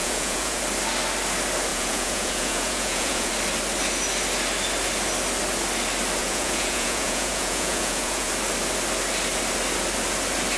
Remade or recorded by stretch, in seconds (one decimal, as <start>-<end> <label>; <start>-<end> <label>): 0.0-0.6 remade; 0.6-1.7 recorded; 1.7-3.3 remade; 3.3-6.2 recorded; 6.2-8.3 remade; 8.3-10.6 recorded